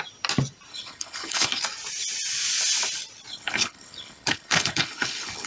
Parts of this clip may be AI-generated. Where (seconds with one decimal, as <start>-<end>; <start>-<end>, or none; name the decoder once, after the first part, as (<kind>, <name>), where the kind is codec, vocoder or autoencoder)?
0.7-1.6 (codec, HILCodec); 3.3-5.5